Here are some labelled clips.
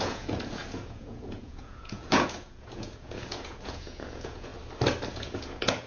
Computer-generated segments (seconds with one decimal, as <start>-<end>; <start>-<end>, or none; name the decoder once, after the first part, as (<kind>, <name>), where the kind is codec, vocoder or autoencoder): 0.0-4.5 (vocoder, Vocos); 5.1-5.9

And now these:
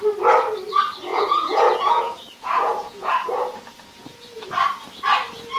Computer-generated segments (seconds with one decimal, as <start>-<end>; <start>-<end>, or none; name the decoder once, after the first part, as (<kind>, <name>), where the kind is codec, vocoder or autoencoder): 1.1-4.5 (vocoder, Vocos)

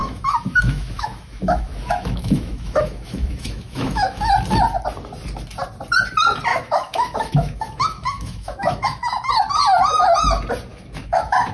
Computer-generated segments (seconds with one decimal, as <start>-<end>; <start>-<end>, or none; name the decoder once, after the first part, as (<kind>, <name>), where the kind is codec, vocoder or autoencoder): 0.0-4.3 (autoencoder, DAC-VAE); 6.5-9.3; 10.7-11.5

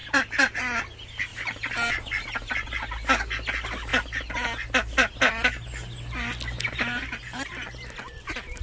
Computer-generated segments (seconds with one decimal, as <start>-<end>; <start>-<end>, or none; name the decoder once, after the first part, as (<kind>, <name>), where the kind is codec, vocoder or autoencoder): 0.0-0.6 (vocoder, BigVGAN v2); 1.3-1.9

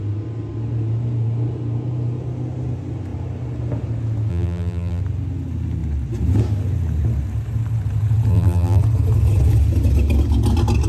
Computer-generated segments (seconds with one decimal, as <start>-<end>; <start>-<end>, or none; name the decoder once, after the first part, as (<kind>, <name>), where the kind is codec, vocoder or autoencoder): 4.3-5.0 (vocoder, BigVGAN v2); 8.3-8.8

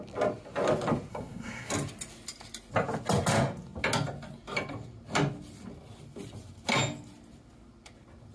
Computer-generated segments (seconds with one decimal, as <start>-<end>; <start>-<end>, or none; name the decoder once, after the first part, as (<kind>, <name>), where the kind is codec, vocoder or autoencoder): 1.1-1.7 (codec, SNAC)

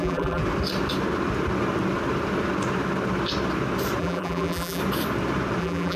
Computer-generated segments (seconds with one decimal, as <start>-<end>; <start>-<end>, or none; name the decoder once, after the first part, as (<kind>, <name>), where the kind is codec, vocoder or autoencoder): 0.0-0.4 (vocoder, BigVGAN v2); 4.0-4.8; 5.6-6.0